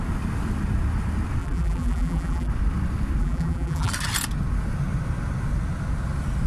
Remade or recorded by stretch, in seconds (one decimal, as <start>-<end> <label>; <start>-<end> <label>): 0.0-1.4 recorded; 1.4-2.5 remade; 2.5-3.2 recorded; 3.2-3.9 remade; 3.9-6.5 recorded